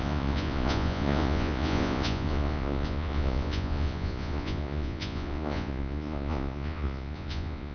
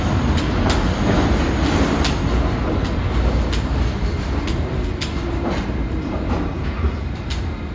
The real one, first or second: second